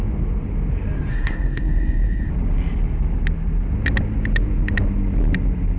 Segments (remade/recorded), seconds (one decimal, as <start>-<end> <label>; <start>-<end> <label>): 0.0-1.1 recorded; 1.1-2.3 remade; 2.3-5.8 recorded